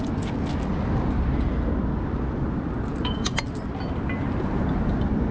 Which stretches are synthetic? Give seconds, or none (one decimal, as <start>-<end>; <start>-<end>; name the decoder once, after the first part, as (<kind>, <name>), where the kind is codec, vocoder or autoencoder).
none